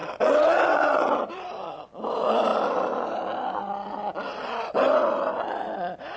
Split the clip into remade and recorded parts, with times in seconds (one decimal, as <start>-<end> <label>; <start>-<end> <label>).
0.0-1.3 remade; 1.3-6.2 recorded